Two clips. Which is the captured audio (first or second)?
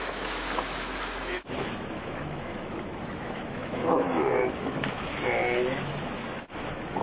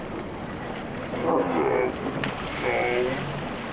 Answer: second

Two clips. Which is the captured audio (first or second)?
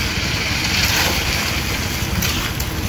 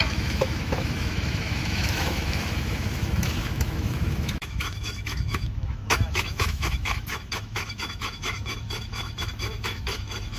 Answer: first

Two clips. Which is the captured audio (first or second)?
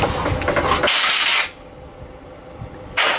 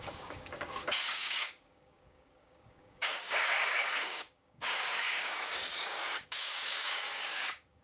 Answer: first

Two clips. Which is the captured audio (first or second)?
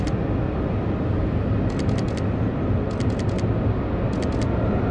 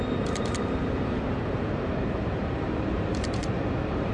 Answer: first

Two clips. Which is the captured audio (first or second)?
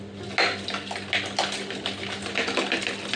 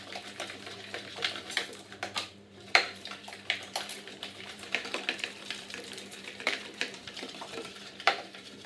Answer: first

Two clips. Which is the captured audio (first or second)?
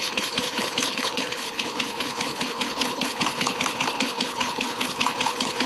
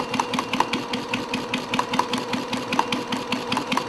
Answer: second